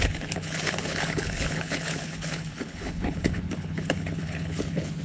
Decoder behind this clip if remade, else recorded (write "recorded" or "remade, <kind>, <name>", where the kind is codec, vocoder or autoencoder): remade, codec, HILCodec